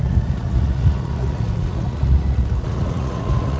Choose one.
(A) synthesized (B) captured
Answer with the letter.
A